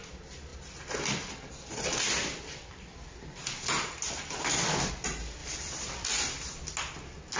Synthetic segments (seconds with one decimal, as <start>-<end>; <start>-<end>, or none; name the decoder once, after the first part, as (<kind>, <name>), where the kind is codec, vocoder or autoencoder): 0.5-4.9 (vocoder, BigVGAN v2); 5.4-6.1